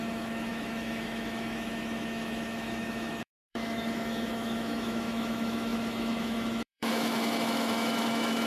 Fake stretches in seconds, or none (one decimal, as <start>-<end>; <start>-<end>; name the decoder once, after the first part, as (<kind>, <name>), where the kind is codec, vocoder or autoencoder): 0.0-8.5 (autoencoder, DAC-VAE)